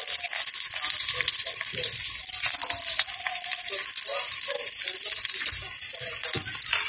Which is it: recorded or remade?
recorded